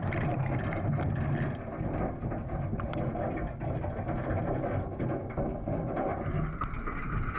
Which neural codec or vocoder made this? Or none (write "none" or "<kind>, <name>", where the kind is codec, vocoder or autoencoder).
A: none